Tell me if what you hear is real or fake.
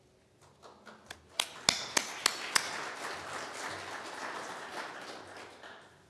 real